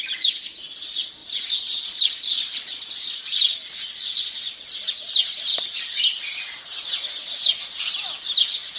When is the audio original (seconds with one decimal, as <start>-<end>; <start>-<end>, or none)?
0.0-1.2; 3.1-5.5; 6.0-8.8